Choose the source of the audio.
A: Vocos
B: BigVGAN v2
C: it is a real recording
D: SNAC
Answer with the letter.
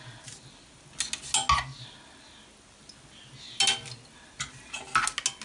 C